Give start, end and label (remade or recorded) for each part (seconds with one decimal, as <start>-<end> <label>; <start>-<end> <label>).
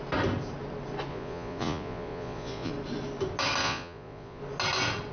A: 0.0-1.1 recorded; 1.1-2.7 remade; 2.7-3.6 recorded; 3.6-4.4 remade; 4.4-5.1 recorded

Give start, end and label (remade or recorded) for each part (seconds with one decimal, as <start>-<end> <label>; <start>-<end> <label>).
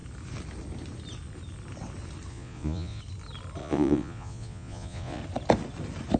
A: 0.0-2.3 recorded; 2.3-3.0 remade; 3.0-3.6 recorded; 3.6-5.2 remade; 5.2-6.2 recorded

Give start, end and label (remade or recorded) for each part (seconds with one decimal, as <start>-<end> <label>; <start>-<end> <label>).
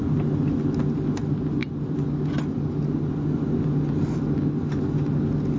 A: 0.0-5.6 recorded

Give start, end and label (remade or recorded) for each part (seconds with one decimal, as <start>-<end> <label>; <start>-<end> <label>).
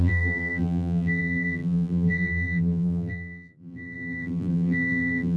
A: 0.0-5.4 remade